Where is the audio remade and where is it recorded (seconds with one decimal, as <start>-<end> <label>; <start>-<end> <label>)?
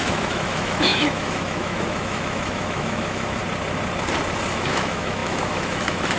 0.0-3.4 remade; 3.4-4.5 recorded; 4.5-6.2 remade